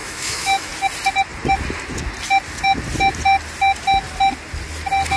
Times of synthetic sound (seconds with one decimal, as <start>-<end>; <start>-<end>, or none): 0.0-0.7